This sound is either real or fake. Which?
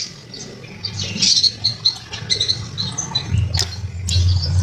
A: real